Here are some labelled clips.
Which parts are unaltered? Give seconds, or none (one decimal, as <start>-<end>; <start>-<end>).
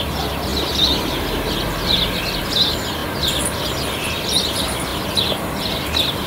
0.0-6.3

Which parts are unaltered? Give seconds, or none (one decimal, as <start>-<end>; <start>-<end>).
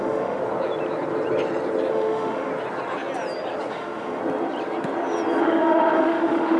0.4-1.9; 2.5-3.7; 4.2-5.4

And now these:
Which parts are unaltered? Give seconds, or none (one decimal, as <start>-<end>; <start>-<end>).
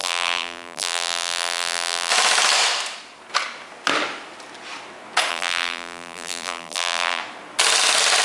2.1-5.3; 7.2-8.2